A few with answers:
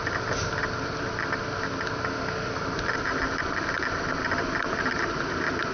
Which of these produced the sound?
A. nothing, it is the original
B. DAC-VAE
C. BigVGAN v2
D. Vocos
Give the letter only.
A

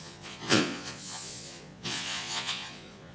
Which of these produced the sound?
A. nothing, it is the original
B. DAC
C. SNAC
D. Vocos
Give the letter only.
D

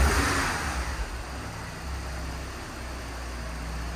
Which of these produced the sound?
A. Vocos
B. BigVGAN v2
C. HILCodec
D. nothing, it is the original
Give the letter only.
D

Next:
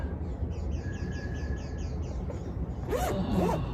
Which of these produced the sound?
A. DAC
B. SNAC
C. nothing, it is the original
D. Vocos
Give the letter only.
C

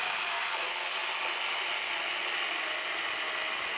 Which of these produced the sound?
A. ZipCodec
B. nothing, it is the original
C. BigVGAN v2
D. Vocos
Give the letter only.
B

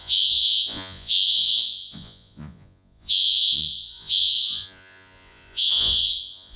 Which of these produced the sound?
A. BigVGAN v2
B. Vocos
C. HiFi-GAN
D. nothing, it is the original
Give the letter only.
B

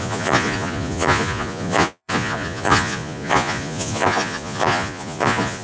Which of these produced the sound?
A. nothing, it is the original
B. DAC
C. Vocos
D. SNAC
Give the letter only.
C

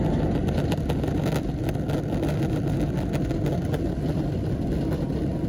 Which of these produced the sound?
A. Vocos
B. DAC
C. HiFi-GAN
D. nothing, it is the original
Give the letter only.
D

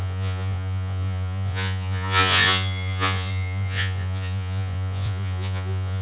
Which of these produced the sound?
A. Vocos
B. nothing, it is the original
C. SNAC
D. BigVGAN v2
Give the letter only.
A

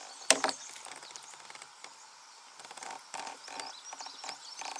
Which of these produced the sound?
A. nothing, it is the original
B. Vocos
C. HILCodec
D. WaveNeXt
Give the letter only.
A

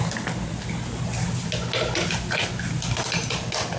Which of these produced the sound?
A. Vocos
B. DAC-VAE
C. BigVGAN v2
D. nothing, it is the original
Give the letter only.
D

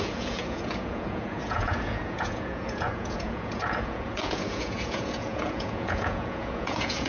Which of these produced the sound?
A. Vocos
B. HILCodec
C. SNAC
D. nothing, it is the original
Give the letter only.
A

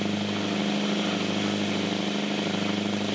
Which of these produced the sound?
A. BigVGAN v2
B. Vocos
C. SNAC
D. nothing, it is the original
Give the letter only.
D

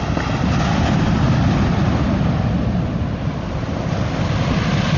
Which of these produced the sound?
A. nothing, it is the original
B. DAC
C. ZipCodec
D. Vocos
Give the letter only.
A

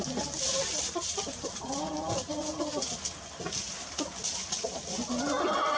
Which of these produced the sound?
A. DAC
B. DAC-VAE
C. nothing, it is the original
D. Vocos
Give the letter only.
C